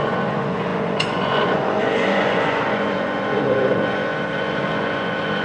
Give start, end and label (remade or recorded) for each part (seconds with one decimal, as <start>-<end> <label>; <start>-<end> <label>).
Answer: 0.0-5.4 remade